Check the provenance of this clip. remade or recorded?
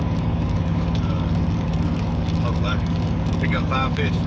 remade